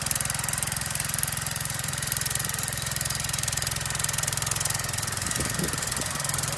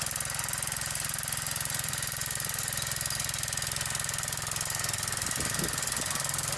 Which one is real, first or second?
second